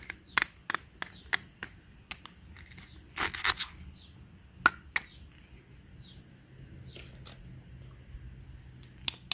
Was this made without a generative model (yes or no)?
yes